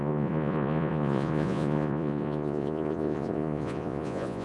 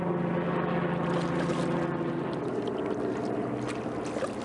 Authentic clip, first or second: second